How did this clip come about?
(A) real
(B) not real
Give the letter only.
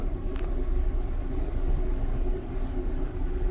B